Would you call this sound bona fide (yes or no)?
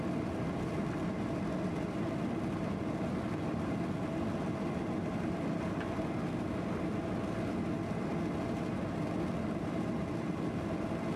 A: yes